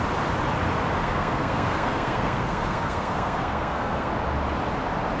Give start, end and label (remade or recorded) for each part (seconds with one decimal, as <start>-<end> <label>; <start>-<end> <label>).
0.0-1.0 recorded; 1.0-4.1 remade; 4.1-5.2 recorded